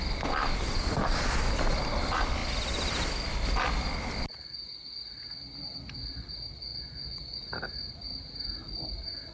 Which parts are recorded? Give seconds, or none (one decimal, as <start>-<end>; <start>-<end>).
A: 0.0-6.7; 7.4-9.3